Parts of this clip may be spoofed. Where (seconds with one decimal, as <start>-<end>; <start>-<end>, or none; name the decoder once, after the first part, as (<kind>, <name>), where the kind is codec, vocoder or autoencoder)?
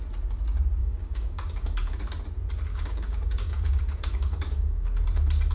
0.8-2.0 (codec, DAC); 2.7-5.0